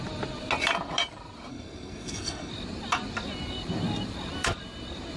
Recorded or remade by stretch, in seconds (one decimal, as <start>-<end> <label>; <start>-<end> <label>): 0.0-1.5 recorded; 1.5-2.5 remade; 2.5-5.2 recorded